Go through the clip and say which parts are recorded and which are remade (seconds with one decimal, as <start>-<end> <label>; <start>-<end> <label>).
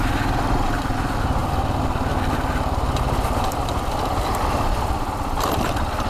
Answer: 0.0-6.1 recorded